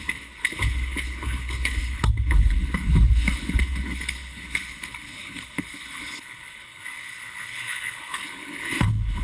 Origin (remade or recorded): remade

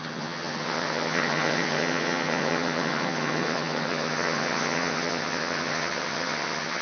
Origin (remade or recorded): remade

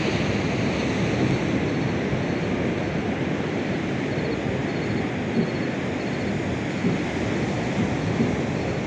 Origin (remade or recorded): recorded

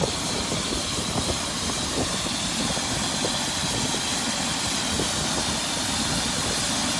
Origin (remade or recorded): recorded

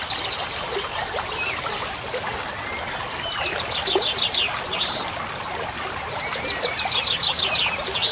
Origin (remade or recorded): recorded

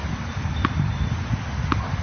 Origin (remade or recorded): recorded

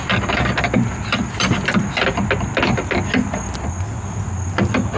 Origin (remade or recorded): recorded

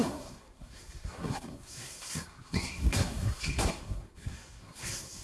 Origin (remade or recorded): remade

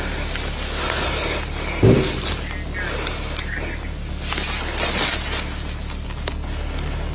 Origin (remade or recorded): recorded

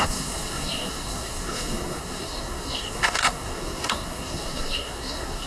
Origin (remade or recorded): remade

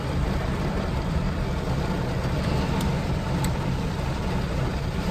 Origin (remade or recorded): remade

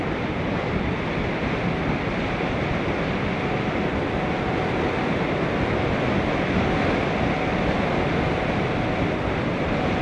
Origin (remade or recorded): recorded